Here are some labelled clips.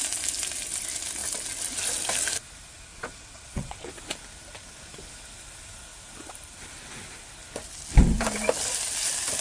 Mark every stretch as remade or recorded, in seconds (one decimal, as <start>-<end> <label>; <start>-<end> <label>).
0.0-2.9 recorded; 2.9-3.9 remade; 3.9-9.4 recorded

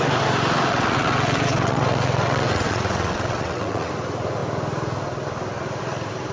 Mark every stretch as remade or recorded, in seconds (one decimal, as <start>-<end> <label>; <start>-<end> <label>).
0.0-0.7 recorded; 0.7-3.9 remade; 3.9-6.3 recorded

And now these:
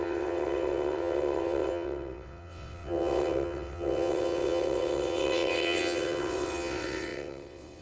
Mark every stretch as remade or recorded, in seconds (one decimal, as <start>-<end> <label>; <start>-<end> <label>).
0.0-7.8 remade

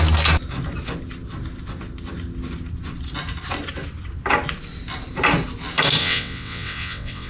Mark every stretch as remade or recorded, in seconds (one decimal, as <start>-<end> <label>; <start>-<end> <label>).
0.0-6.0 recorded; 6.0-7.3 remade